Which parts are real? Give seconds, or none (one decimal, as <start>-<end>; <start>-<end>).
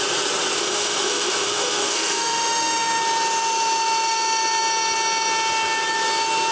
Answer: 0.0-0.6; 3.0-6.5